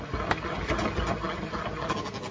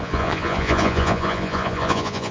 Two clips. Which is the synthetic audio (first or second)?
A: second